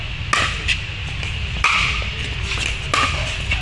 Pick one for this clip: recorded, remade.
recorded